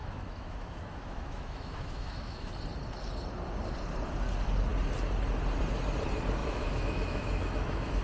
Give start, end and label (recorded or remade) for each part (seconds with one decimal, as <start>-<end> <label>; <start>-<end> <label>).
0.0-2.5 remade; 2.5-6.4 recorded; 6.4-8.0 remade